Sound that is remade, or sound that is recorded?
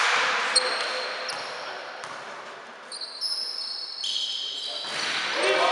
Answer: recorded